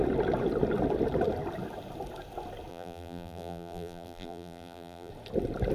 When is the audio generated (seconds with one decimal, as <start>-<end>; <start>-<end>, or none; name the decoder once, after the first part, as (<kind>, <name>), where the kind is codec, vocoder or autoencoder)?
2.7-5.1 (vocoder, BigVGAN v2)